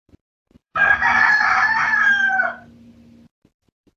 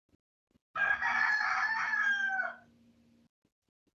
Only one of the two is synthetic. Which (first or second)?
first